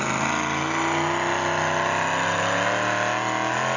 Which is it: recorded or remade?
recorded